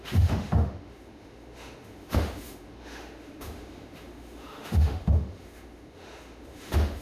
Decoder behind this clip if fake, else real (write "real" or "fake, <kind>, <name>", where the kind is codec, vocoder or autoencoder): fake, autoencoder, DAC-VAE